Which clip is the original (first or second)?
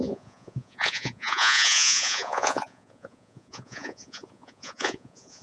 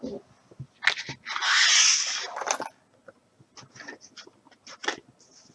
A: second